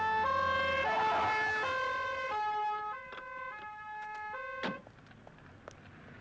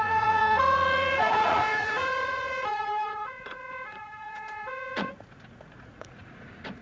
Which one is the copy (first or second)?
second